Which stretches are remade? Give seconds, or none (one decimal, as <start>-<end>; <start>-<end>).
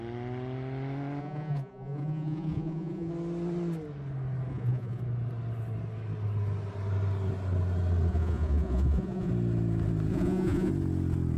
1.2-3.1; 4.5-5.0; 8.1-9.3; 10.1-10.7